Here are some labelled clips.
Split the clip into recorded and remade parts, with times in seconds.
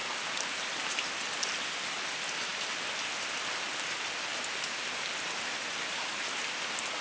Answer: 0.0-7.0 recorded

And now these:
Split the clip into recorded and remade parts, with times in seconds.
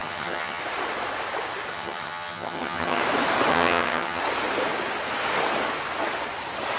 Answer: 0.0-0.6 remade; 0.6-1.7 recorded; 1.7-3.0 remade; 3.0-3.5 recorded; 3.5-4.2 remade; 4.2-6.8 recorded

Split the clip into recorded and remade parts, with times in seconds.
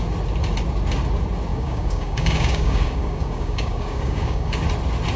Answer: 0.0-1.5 recorded; 1.5-4.6 remade; 4.6-5.2 recorded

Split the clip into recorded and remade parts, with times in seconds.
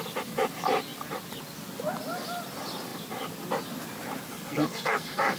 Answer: 0.0-4.3 recorded; 4.3-5.4 remade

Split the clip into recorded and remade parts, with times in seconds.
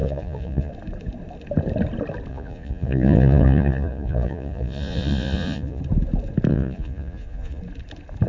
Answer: 0.0-0.7 remade; 0.7-2.3 recorded; 2.3-5.8 remade; 5.8-6.5 recorded; 6.5-7.6 remade; 7.6-8.3 recorded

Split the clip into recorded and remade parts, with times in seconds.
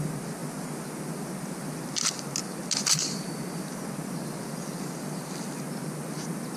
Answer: 0.0-6.6 recorded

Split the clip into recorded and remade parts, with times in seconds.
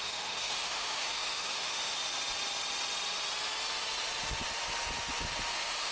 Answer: 0.0-2.0 remade; 2.0-5.5 recorded; 5.5-5.9 remade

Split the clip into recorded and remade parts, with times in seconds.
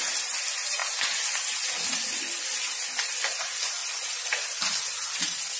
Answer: 0.0-5.6 recorded